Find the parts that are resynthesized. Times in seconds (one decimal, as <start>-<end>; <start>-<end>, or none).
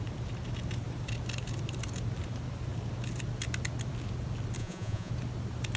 4.6-5.1